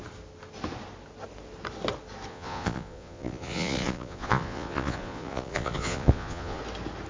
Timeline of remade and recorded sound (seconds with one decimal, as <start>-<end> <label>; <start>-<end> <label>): 0.0-2.3 recorded; 2.3-6.6 remade; 6.6-7.1 recorded